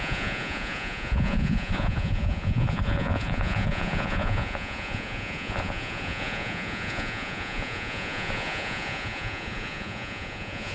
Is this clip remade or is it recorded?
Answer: remade